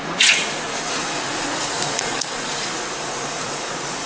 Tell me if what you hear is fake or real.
fake